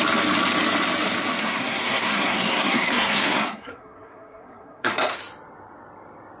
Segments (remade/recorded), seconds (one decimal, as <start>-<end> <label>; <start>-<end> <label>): 0.0-1.4 recorded; 1.4-5.2 remade; 5.2-6.4 recorded